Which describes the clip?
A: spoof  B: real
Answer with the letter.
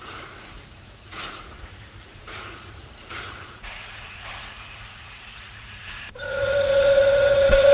A